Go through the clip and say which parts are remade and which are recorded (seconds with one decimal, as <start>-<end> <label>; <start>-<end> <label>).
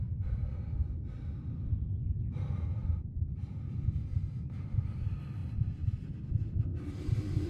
0.0-7.5 recorded